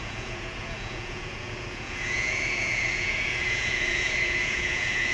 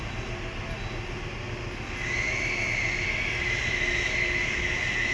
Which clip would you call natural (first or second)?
second